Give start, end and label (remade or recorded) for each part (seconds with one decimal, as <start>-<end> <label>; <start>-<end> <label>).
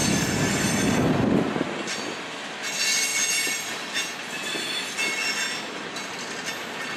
0.0-3.1 recorded; 3.1-3.9 remade; 3.9-7.0 recorded